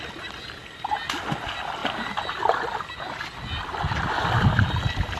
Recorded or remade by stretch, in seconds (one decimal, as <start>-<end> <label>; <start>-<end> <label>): 0.0-5.2 recorded